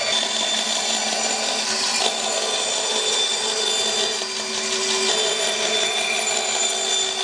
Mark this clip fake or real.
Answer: real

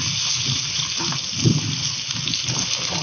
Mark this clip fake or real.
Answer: real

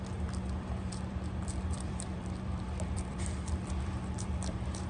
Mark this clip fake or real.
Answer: fake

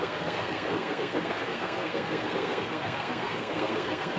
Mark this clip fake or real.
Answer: fake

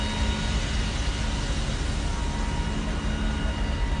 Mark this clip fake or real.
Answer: real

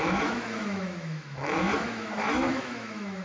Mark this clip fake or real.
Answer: fake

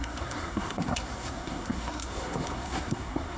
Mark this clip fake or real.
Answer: fake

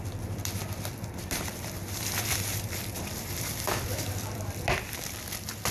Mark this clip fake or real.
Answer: fake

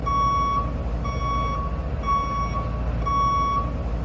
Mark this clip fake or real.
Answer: real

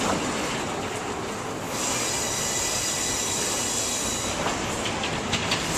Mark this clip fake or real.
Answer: real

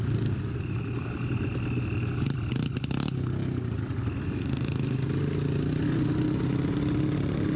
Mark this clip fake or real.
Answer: real